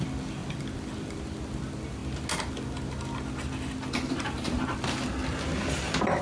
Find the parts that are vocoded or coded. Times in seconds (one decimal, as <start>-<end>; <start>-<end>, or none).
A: none